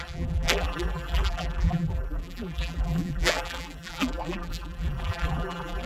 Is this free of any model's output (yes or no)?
no